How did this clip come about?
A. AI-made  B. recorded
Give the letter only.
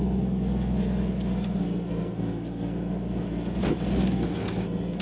A